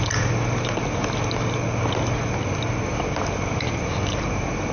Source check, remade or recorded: recorded